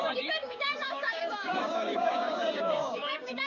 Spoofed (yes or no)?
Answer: yes